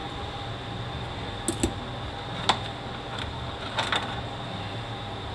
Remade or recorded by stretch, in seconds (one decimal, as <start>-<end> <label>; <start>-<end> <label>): 0.0-5.3 recorded